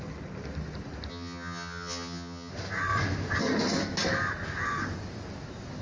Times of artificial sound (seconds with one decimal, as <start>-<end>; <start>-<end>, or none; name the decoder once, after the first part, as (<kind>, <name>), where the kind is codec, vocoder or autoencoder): 1.1-2.5 (vocoder, HiFi-GAN)